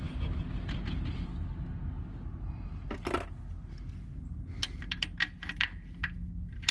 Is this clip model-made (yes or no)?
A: no